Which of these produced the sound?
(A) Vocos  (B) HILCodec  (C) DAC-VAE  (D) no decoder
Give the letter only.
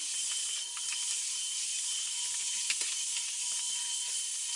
D